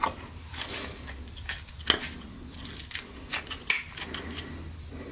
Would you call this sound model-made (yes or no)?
no